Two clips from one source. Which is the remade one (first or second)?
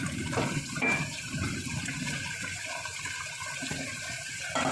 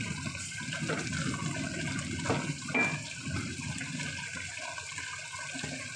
first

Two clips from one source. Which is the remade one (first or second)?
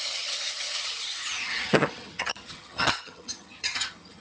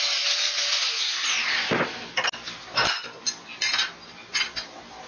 first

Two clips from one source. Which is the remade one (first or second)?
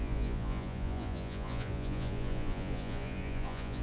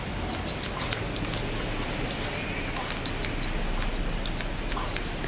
first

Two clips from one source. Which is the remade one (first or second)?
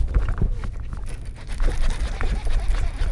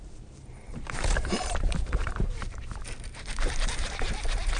second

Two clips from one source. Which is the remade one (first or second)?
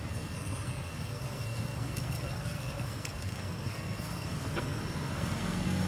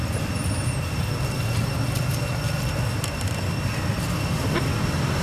first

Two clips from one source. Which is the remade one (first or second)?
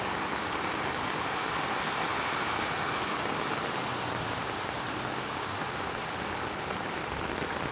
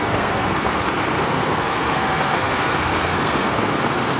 second